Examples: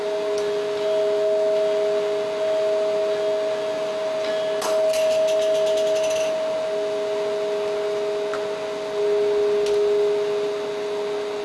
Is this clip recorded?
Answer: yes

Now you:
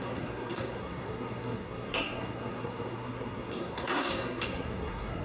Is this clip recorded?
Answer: no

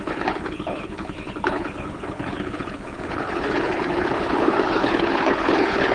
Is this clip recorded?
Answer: no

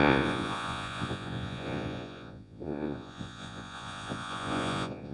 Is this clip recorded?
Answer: no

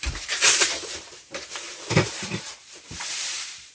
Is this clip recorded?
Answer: no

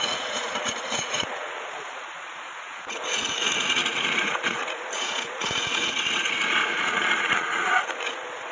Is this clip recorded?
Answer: no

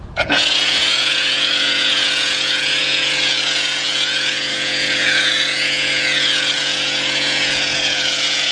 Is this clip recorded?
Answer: no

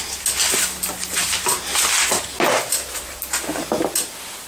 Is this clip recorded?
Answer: yes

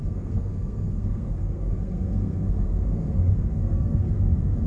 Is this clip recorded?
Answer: no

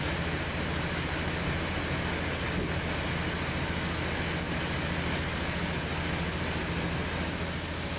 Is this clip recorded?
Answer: yes